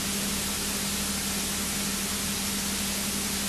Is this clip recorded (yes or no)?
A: yes